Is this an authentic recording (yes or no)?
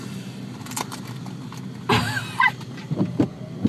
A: yes